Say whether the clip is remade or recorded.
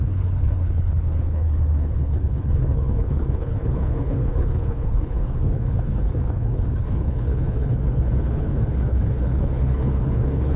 remade